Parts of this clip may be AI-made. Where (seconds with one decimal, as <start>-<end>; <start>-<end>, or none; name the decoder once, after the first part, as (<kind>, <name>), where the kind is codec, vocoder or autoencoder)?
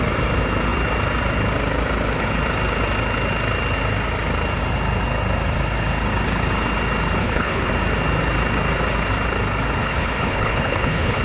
7.2-7.7 (codec, HILCodec); 9.8-11.2